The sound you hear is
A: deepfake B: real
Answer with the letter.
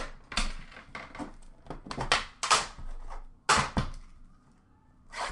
B